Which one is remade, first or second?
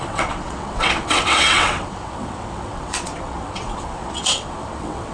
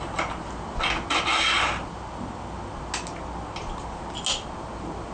first